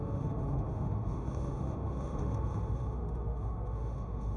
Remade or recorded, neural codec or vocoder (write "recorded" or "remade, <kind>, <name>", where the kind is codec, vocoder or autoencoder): remade, autoencoder, DAC-VAE